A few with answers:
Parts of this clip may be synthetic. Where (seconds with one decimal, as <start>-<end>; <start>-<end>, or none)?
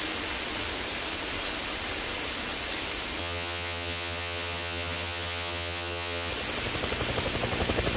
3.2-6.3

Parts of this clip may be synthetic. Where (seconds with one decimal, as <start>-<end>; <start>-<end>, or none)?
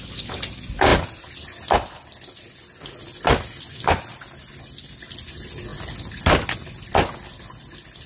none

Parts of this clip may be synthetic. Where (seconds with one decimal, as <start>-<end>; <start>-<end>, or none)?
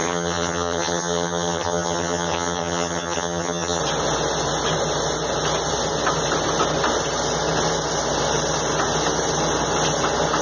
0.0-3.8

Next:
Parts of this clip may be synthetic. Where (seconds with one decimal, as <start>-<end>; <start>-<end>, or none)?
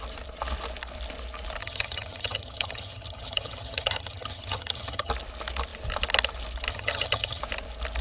1.6-5.1; 6.7-7.4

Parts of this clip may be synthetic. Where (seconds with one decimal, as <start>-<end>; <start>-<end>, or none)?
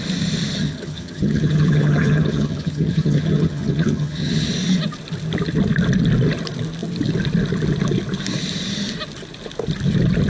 0.6-4.5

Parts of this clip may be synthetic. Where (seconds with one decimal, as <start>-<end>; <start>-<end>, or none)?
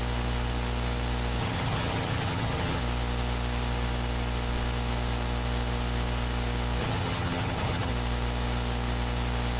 1.4-2.8; 6.8-7.9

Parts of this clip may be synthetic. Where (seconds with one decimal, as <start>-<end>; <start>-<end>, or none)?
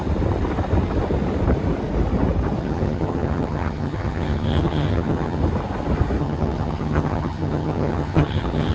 2.6-5.4; 6.2-8.7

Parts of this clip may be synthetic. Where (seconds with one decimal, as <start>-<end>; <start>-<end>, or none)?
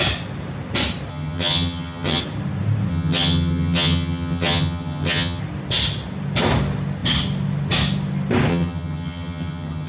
1.1-2.2; 2.9-5.4; 8.5-9.9